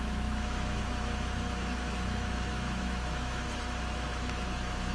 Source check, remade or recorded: remade